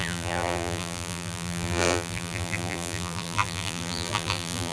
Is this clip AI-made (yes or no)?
yes